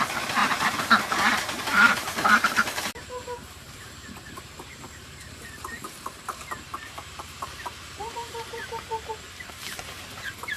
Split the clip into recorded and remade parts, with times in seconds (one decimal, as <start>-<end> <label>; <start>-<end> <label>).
0.0-10.6 remade